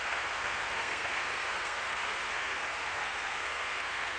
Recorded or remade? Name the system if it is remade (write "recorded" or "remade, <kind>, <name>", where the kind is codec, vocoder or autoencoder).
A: remade, codec, SNAC